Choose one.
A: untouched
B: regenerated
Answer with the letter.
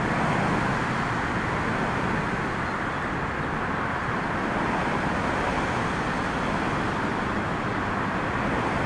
A